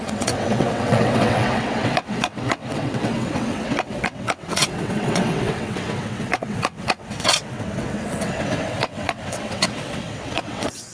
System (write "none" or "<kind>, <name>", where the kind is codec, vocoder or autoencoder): vocoder, WaveNeXt